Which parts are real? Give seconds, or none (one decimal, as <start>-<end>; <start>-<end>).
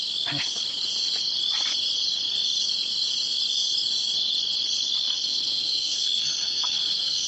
0.0-5.0